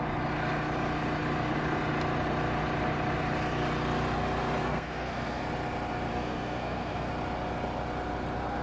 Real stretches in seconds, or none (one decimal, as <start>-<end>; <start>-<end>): 0.0-4.6; 5.4-6.1; 7.1-8.6